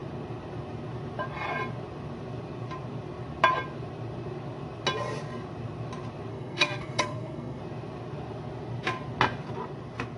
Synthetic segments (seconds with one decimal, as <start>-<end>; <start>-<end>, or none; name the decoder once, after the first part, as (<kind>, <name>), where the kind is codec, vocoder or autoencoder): 6.3-7.6 (codec, SNAC)